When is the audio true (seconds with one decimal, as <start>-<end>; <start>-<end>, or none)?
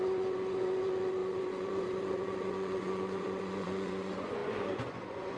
none